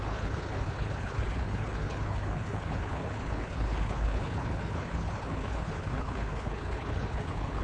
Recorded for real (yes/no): no